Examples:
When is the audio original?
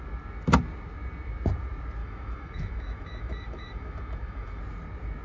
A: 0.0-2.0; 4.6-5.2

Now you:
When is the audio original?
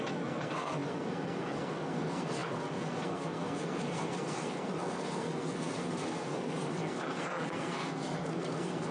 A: none